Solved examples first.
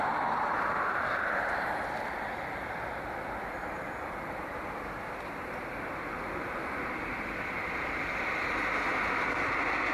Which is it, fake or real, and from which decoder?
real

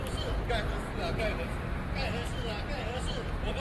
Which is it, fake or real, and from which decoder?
real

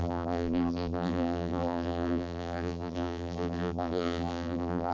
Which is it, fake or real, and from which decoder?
fake, vocoder, BigVGAN v2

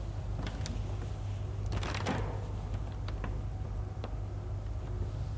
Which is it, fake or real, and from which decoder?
real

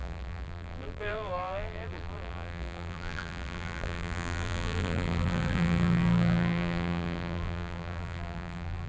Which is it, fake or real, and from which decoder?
fake, vocoder, BigVGAN v2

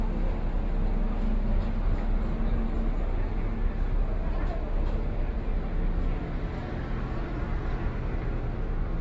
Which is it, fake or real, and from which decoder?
real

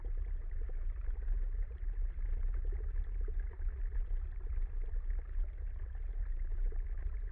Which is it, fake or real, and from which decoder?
real